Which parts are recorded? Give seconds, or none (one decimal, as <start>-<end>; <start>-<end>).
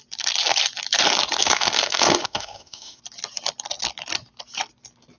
0.0-1.4; 3.0-5.2